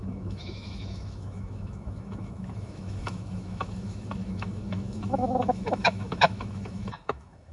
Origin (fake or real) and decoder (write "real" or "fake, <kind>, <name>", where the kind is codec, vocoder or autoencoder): fake, autoencoder, DAC-VAE